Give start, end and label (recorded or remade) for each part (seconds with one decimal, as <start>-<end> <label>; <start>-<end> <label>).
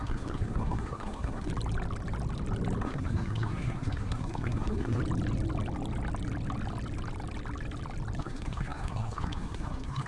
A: 0.0-1.5 remade; 1.5-2.8 recorded; 2.8-5.0 remade; 5.0-8.2 recorded; 8.2-10.1 remade